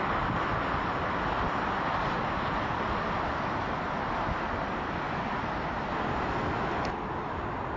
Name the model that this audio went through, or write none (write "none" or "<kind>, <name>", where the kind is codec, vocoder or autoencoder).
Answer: none